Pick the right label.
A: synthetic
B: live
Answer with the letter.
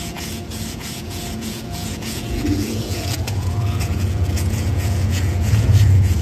A